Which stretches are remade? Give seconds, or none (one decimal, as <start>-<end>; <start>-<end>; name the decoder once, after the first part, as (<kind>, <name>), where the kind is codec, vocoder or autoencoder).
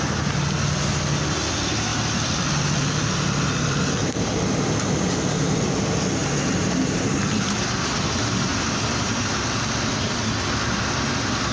1.9-5.6 (vocoder, BigVGAN v2); 8.5-10.1